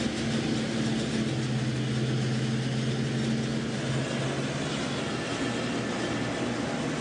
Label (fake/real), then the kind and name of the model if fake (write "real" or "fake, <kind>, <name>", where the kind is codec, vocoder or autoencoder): real